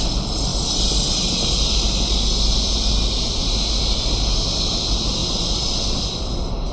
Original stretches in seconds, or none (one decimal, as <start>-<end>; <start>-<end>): 0.0-6.7